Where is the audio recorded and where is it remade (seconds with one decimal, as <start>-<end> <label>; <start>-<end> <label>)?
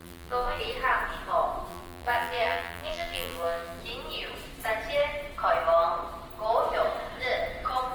0.0-0.6 remade; 0.6-1.7 recorded; 1.7-3.8 remade; 3.8-7.9 recorded